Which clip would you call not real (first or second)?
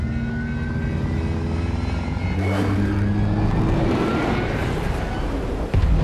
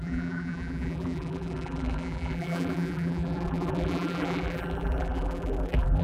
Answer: second